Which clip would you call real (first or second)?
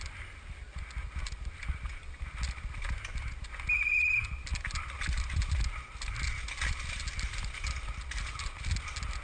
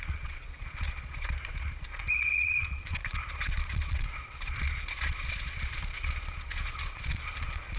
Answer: first